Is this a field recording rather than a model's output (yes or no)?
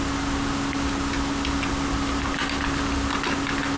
yes